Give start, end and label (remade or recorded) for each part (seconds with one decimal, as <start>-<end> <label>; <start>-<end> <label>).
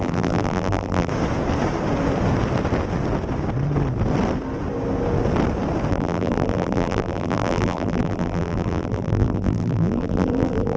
0.0-1.1 remade; 1.1-5.9 recorded; 5.9-10.8 remade